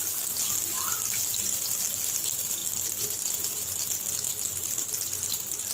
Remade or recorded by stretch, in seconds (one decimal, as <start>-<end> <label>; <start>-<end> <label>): 0.0-5.7 recorded